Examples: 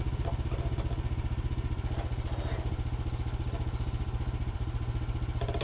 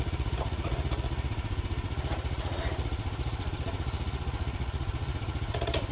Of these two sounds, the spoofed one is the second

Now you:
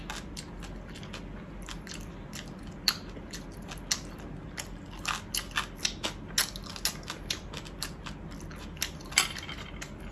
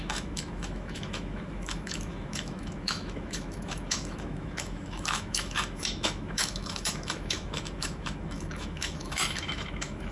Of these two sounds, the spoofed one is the second